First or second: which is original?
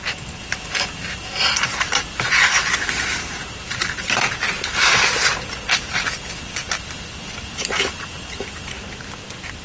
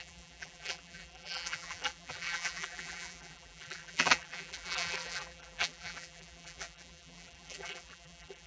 first